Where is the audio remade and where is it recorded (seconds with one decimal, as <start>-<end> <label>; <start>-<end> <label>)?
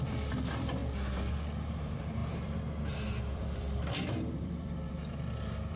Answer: 0.0-0.8 remade; 0.8-1.7 recorded; 1.7-5.8 remade